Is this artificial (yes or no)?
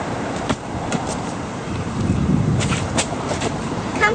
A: yes